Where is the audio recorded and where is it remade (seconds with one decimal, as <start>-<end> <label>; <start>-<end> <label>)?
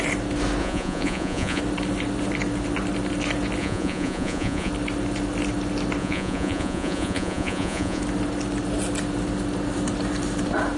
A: 0.0-0.6 recorded; 0.6-1.6 remade; 1.6-3.6 recorded; 3.6-4.7 remade; 4.7-6.0 recorded; 6.0-8.0 remade; 8.0-10.8 recorded